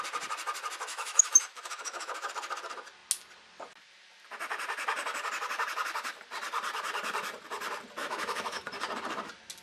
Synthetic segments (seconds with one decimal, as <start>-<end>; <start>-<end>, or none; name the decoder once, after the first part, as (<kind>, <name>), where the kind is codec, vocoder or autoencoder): 0.9-2.3 (autoencoder, DAC-VAE); 8.0-8.6